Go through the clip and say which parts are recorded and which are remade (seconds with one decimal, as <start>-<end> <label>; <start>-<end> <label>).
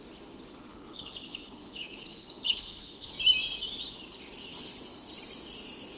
0.0-0.7 recorded; 0.7-3.1 remade; 3.1-4.5 recorded; 4.5-5.1 remade; 5.1-6.0 recorded